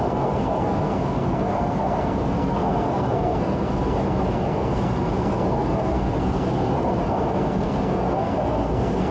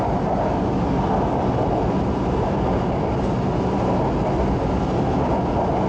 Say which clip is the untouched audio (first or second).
second